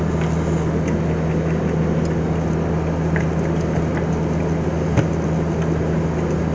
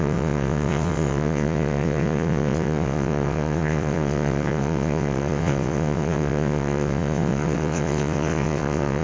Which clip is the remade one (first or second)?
second